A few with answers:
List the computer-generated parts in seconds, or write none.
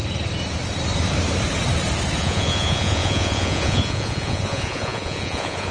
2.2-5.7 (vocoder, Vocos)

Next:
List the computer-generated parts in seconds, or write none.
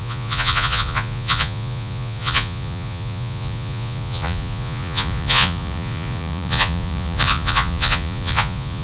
0.0-8.8 (vocoder, Vocos)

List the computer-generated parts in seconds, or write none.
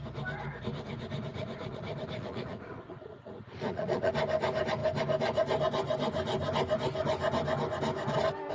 1.3-4.1 (vocoder, Vocos)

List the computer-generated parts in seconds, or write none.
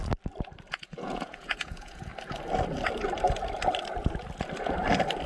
0.7-2.1 (vocoder, Vocos)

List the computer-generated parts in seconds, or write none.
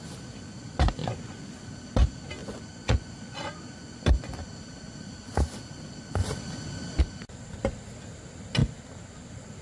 1.0-1.6 (vocoder, Vocos); 2.4-4.0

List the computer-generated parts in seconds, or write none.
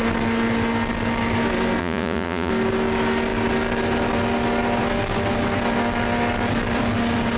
1.8-2.5 (vocoder, Vocos)